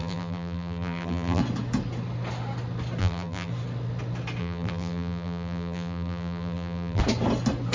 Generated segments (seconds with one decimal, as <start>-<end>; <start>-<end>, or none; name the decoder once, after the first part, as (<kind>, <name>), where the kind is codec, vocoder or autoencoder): 0.0-1.4 (vocoder, BigVGAN v2); 3.0-3.5; 4.4-7.0